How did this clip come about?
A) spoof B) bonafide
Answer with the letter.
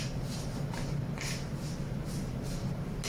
A